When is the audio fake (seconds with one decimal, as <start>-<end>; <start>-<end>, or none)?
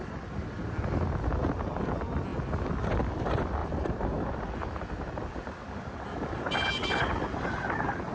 3.6-4.3